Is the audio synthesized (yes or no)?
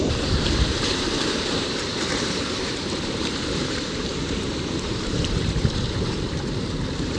yes